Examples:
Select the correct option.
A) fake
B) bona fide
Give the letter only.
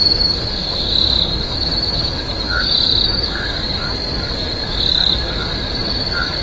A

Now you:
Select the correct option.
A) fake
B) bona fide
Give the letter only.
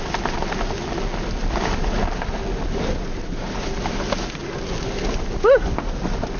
B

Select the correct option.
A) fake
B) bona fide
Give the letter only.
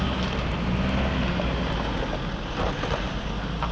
B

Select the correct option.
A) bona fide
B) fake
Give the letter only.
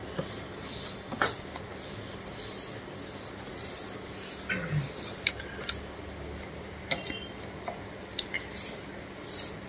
A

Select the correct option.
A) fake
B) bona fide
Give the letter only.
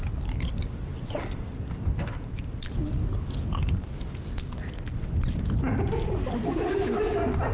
B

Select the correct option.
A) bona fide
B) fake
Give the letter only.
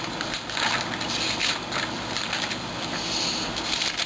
A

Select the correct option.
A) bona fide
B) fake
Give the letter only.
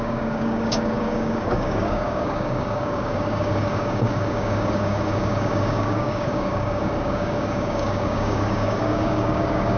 B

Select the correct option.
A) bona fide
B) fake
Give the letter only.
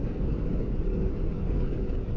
B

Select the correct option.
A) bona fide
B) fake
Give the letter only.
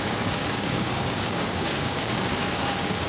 B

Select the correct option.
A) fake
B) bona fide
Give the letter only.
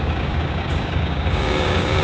A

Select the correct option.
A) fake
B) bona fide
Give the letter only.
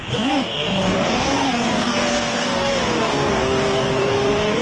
A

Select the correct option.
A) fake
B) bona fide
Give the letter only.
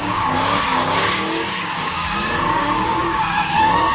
A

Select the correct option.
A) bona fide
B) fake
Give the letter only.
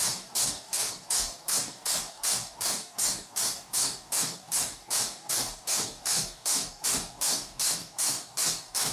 B